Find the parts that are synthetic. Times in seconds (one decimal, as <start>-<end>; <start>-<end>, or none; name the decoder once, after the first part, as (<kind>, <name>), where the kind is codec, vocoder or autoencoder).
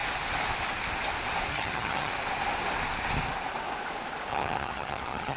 1.5-2.1 (vocoder, HiFi-GAN); 4.3-5.4